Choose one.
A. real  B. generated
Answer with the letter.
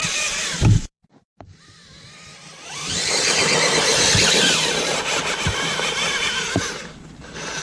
B